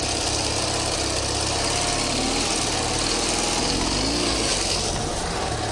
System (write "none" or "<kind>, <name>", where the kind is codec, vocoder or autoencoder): none